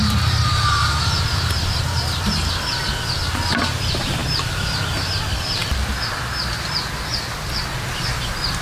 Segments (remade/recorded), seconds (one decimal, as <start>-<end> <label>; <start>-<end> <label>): 0.0-2.8 remade; 2.8-8.6 recorded